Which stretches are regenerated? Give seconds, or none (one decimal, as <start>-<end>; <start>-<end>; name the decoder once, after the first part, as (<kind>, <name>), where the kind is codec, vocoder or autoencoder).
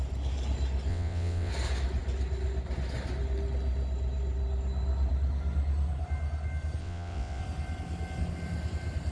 0.9-1.5 (vocoder, WaveNeXt); 6.8-7.4